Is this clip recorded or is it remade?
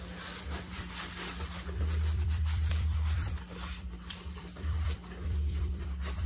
remade